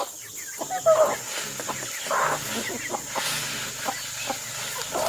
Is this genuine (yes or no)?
yes